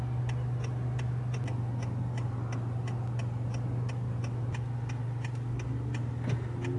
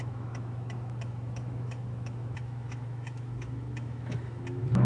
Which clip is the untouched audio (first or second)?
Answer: first